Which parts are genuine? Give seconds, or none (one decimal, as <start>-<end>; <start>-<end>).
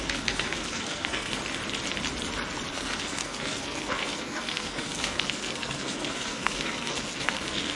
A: 1.4-2.7